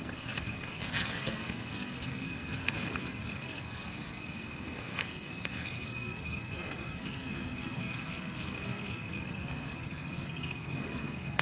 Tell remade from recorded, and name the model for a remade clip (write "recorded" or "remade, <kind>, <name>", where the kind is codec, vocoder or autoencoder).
remade, codec, SNAC